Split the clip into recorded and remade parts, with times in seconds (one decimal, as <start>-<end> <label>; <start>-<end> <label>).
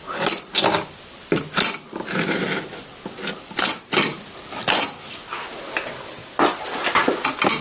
0.0-7.6 recorded